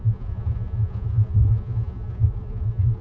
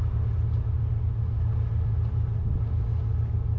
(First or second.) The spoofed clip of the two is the first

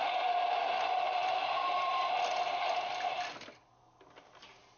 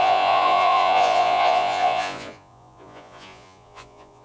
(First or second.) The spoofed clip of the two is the second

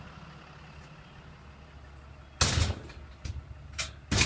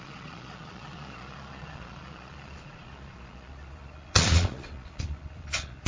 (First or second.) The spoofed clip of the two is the second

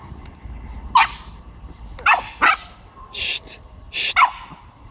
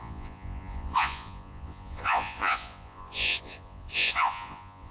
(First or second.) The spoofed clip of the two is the second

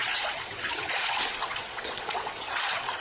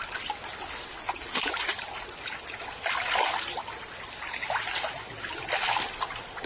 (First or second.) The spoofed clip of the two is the first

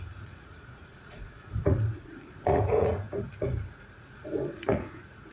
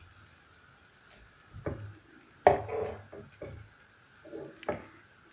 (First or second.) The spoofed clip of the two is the first